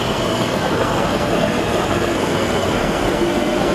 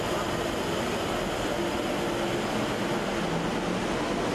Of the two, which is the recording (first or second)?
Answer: second